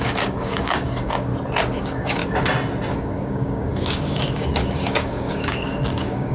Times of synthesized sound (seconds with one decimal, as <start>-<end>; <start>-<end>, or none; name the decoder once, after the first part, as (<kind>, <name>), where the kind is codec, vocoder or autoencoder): 0.0-1.3 (codec, DAC); 1.8-2.2; 2.9-6.3